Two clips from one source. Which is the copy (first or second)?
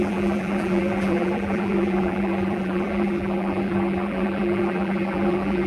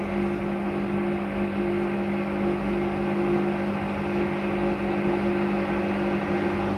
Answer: first